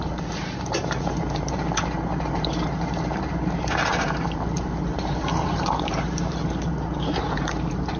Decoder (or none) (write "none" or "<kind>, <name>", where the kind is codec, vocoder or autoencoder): vocoder, BigVGAN v2